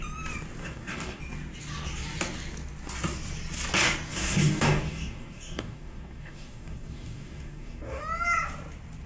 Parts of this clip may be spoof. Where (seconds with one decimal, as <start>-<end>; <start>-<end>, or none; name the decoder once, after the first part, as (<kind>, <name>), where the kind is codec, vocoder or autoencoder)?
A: 0.6-1.2 (codec, DAC); 4.1-8.0